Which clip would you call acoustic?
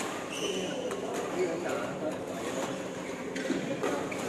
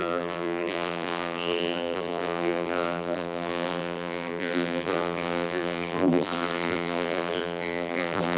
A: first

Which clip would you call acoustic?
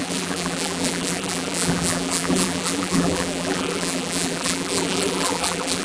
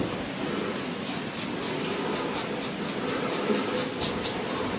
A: second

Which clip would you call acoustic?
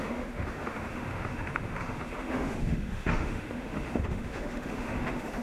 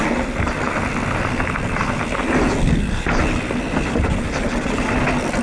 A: second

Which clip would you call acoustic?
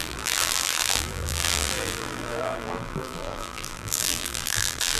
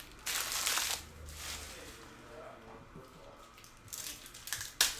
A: second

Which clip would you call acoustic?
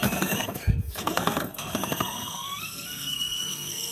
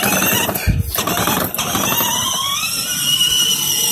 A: second